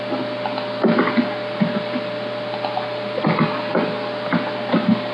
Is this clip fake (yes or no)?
no